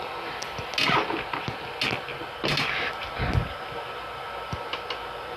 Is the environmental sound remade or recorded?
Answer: recorded